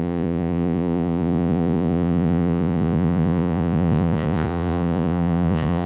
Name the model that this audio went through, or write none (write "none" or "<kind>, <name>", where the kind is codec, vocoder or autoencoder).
vocoder, Vocos